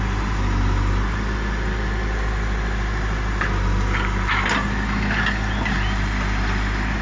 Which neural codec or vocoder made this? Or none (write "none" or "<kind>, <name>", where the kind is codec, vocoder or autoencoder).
none